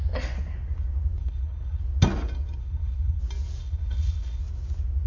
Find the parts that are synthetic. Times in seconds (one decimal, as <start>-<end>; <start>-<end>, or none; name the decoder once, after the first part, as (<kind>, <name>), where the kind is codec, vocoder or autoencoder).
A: 1.2-1.8 (codec, HILCodec); 2.6-3.2; 3.6-4.4